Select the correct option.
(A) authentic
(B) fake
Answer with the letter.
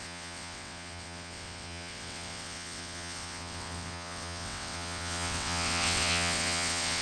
B